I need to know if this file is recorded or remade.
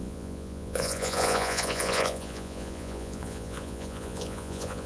remade